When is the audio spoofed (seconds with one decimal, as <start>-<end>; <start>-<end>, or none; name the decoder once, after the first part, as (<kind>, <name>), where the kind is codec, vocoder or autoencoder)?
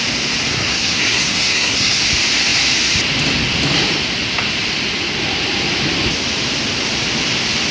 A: 0.5-2.0 (codec, SNAC)